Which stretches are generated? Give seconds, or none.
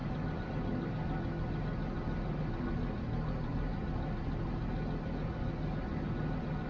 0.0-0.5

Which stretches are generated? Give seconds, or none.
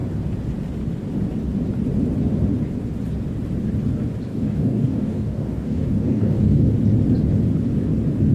4.3-6.7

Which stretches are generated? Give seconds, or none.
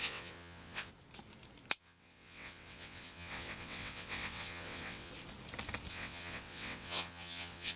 0.0-0.9; 1.8-5.1; 5.9-7.8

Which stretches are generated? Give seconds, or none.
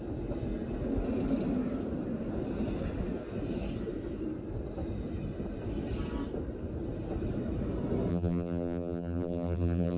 8.1-10.0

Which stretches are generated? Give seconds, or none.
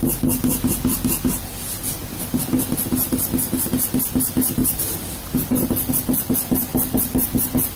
3.0-3.6; 4.6-5.9; 6.7-7.8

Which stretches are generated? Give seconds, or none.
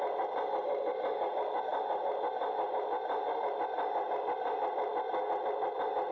none